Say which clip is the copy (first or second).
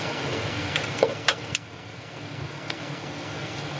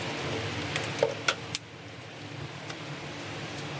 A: first